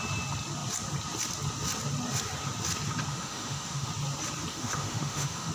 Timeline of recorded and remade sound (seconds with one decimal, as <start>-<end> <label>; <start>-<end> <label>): 0.0-3.1 recorded; 3.1-3.9 remade; 3.9-4.5 recorded; 4.5-5.5 remade